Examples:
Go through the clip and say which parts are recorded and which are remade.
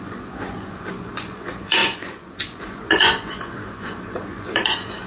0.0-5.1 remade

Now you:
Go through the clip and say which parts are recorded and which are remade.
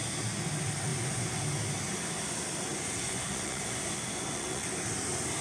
0.0-0.9 recorded; 0.9-1.4 remade; 1.4-2.7 recorded; 2.7-4.7 remade; 4.7-5.4 recorded